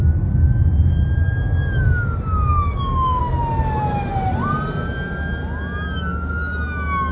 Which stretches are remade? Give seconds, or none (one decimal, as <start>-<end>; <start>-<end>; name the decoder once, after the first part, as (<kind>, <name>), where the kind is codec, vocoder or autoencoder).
2.5-3.2 (codec, DAC)